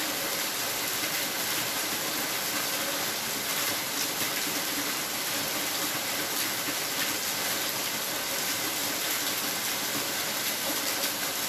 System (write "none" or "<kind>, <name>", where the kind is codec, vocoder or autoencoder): none